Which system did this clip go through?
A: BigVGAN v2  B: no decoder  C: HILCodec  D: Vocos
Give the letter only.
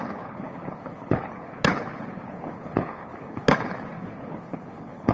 C